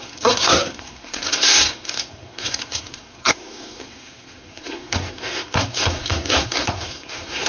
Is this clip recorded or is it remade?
remade